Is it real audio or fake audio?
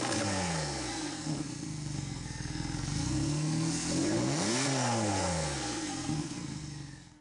fake